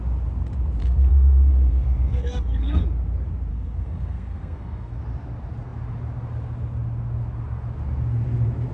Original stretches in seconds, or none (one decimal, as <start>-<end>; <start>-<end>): 0.0-0.8; 2.8-3.5; 5.0-8.7